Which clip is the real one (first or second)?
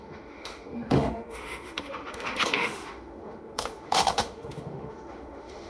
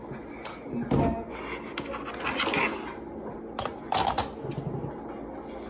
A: second